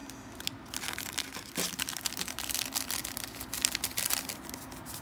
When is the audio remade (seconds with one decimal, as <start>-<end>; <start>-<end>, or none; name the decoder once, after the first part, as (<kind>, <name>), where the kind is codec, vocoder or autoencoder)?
none